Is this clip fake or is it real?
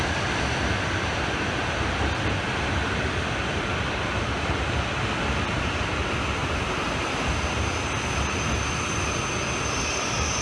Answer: real